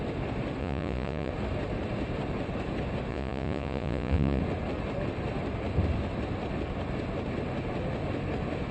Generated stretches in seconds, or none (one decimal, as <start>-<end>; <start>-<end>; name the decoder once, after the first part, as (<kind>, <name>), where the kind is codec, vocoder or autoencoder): 0.6-1.3 (vocoder, Vocos); 3.1-4.4